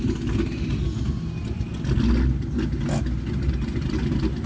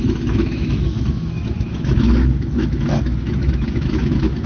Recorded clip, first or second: first